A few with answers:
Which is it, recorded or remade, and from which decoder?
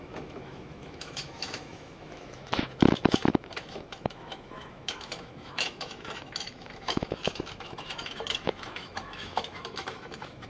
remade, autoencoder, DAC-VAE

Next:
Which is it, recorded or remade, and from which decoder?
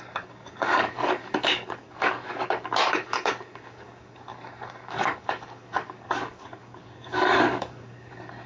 remade, codec, DAC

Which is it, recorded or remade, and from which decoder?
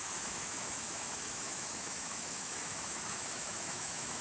remade, autoencoder, DAC-VAE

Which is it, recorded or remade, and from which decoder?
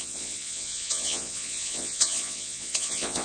remade, vocoder, Vocos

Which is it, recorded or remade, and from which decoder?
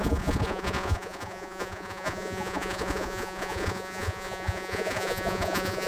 remade, vocoder, Vocos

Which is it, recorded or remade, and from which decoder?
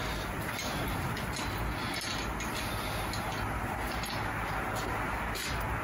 recorded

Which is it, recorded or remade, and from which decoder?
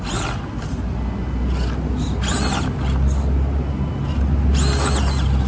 recorded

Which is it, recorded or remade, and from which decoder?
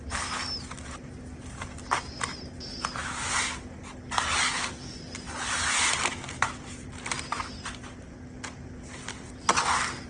recorded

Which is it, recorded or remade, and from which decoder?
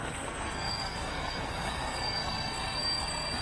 remade, codec, SNAC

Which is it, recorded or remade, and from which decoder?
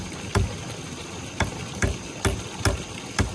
recorded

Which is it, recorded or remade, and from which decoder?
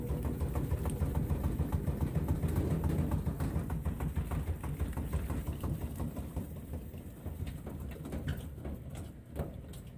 recorded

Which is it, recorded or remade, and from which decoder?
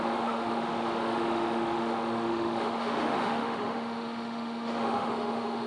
remade, autoencoder, DAC-VAE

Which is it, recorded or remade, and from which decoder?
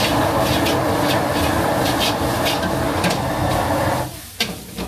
recorded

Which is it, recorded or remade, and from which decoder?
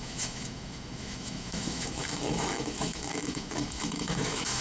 remade, autoencoder, DAC-VAE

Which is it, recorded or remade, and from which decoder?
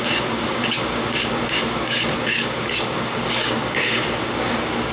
remade, codec, DAC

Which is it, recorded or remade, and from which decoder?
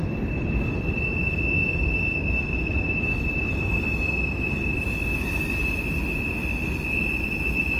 recorded